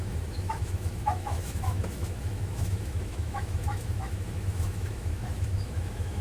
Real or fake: fake